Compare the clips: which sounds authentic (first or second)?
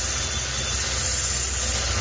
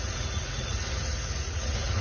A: first